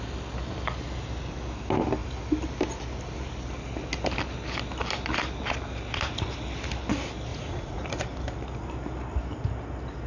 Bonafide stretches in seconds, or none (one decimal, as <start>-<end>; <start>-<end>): 0.0-7.3; 8.0-10.1